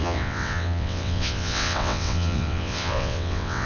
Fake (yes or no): yes